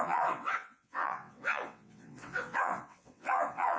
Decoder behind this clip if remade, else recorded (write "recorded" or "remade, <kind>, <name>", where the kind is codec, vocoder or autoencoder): remade, vocoder, WaveNeXt